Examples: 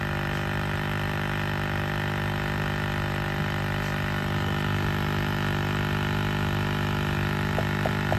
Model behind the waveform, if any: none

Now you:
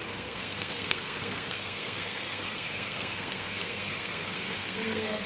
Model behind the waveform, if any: codec, SNAC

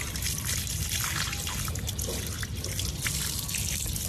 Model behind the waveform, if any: none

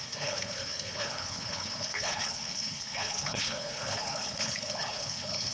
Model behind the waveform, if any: codec, HILCodec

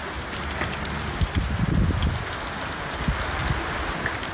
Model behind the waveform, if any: none